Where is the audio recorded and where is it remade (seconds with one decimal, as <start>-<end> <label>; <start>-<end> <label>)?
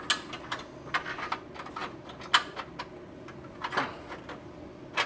0.0-5.1 recorded